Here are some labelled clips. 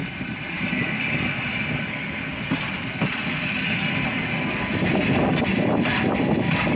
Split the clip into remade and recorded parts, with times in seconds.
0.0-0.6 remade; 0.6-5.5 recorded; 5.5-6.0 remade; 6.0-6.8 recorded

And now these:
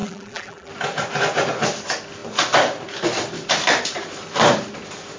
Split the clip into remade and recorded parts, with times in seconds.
0.0-0.7 remade; 0.7-5.2 recorded